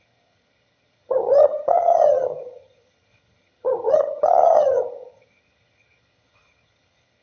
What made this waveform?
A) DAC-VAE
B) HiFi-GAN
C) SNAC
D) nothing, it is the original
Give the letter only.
B